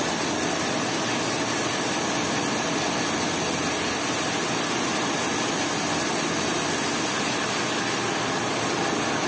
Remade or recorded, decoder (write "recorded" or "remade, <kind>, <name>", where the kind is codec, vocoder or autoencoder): recorded